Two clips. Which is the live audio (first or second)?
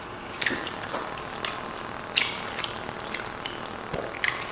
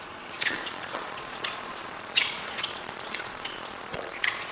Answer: first